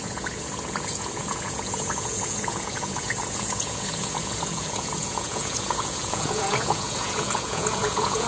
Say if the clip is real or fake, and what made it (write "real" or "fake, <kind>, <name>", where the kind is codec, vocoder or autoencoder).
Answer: fake, vocoder, Vocos